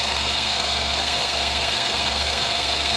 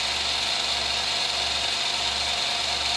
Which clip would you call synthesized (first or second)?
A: first